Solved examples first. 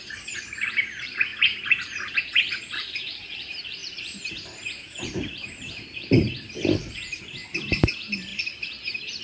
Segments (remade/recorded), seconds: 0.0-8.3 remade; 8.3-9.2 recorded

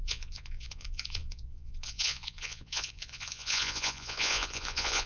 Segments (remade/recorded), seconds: 0.0-5.1 remade

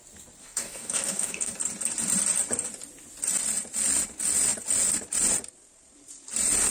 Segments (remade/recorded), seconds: 0.0-0.4 recorded; 0.4-1.5 remade; 1.5-6.7 recorded

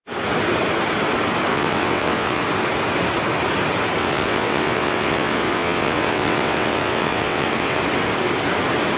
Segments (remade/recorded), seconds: 0.0-1.5 recorded; 1.5-2.4 remade; 2.4-4.0 recorded; 4.0-7.8 remade; 7.8-9.0 recorded

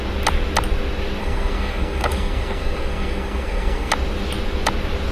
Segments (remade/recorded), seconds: 0.0-1.2 recorded; 1.2-3.9 remade; 3.9-5.1 recorded

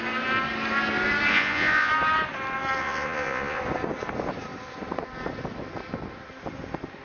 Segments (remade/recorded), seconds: 0.0-1.3 recorded; 1.3-1.9 remade; 1.9-2.8 recorded; 2.8-3.6 remade; 3.6-7.0 recorded

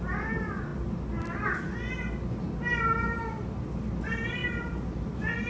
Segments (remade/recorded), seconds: 0.0-5.5 recorded

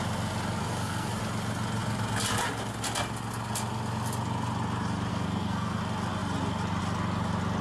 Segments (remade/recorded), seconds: 0.0-0.6 recorded; 0.6-1.2 remade; 1.2-5.1 recorded; 5.1-5.8 remade; 5.8-7.6 recorded